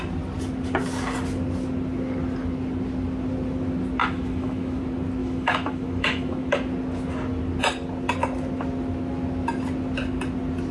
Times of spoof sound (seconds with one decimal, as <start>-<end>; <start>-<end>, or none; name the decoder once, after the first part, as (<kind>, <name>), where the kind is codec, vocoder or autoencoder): 4.0-4.8 (autoencoder, DAC-VAE); 5.2-6.5